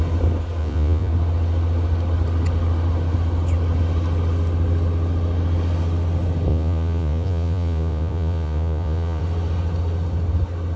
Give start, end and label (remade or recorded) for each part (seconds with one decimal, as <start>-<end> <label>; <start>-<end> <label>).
0.0-0.6 recorded; 0.6-1.1 remade; 1.1-6.5 recorded; 6.5-9.2 remade; 9.2-10.8 recorded